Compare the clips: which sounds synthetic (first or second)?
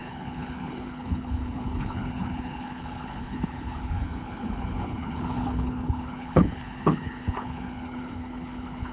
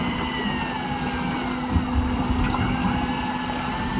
first